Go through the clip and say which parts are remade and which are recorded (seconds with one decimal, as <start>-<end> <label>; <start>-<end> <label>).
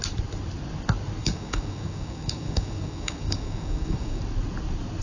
0.0-1.2 recorded; 1.2-4.2 remade; 4.2-5.0 recorded